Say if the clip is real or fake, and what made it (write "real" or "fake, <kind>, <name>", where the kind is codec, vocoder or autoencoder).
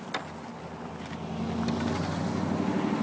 real